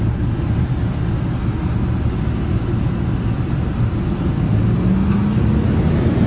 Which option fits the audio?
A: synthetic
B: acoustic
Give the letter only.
B